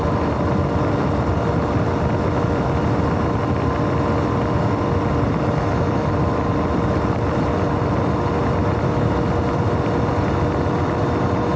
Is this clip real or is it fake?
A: real